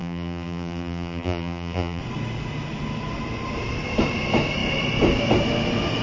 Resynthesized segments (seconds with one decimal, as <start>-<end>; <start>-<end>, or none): 0.0-2.0